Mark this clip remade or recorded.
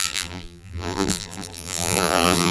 remade